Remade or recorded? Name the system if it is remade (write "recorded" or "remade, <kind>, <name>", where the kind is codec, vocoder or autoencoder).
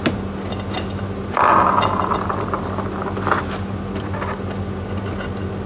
recorded